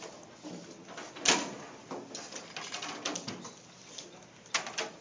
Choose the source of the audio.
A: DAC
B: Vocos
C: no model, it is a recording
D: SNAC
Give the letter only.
C